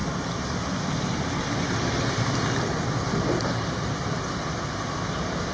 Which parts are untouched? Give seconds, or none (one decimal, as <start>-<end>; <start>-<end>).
0.0-5.5